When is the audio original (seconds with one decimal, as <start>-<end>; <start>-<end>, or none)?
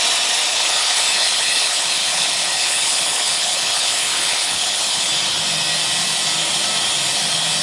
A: 0.0-0.5; 5.1-7.6